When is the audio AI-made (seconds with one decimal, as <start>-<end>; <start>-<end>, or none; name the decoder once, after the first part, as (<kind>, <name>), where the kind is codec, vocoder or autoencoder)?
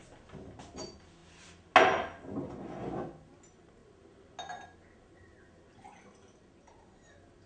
none